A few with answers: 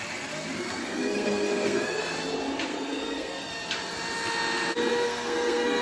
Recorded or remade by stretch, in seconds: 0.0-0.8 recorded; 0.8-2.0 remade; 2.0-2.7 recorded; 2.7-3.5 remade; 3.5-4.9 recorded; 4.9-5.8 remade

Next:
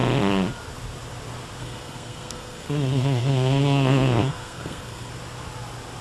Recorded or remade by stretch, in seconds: 0.0-1.6 recorded; 1.6-5.1 remade; 5.1-6.0 recorded